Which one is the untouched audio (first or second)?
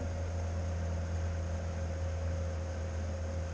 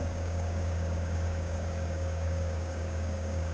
first